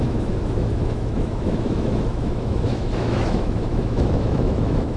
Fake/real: fake